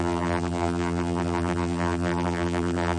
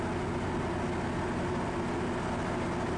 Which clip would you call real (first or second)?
second